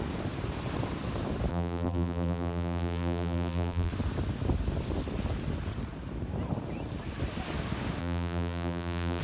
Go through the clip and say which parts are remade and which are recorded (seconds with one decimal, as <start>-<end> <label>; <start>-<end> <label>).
0.0-1.5 recorded; 1.5-3.9 remade; 3.9-8.0 recorded; 8.0-9.2 remade